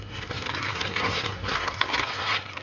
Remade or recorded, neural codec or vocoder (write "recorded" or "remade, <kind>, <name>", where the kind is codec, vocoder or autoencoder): remade, codec, SNAC